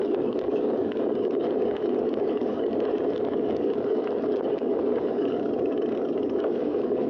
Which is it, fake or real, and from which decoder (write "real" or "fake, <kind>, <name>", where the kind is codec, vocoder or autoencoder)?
fake, codec, DAC